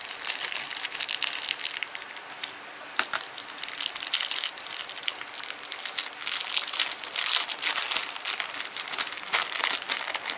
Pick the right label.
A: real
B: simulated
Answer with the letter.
A